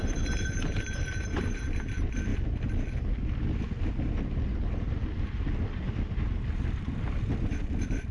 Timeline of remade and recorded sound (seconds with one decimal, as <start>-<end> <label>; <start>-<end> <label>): 0.0-2.3 remade; 2.3-5.7 recorded; 5.7-8.1 remade